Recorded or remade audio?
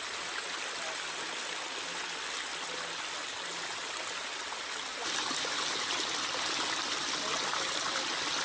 recorded